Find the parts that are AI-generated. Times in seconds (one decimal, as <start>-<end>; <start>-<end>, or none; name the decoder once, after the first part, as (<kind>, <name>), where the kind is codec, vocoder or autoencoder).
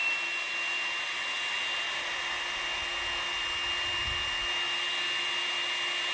none